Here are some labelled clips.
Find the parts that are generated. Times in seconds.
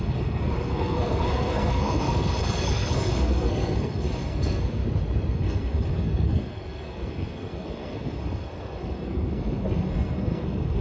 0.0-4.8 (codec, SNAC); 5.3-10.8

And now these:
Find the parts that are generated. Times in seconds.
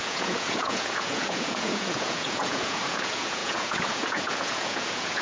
0.0-5.2 (vocoder, Vocos)